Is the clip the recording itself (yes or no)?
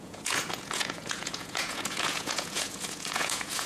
no